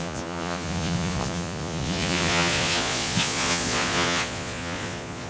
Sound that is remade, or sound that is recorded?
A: remade